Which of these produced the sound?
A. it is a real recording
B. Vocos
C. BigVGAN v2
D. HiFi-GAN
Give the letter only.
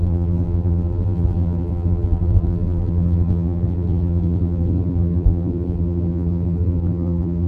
C